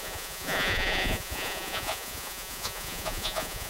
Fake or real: fake